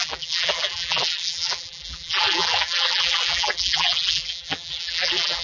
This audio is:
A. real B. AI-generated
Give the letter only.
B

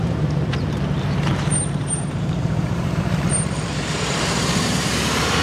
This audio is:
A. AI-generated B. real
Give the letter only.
A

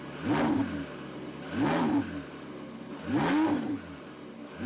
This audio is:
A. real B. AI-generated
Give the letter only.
A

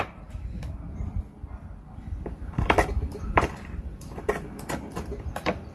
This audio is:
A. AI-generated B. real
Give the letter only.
A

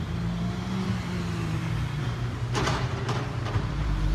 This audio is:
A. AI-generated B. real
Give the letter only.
A